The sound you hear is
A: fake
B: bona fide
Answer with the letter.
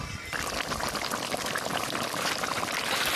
B